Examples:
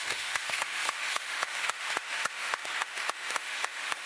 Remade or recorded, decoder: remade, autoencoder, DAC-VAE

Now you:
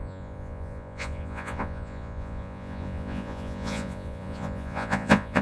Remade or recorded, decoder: remade, vocoder, Vocos